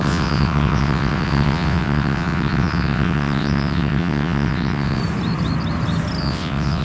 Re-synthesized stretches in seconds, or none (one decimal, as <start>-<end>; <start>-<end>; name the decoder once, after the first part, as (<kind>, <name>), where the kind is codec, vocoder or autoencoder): 0.0-5.0 (vocoder, WaveNeXt); 6.2-6.8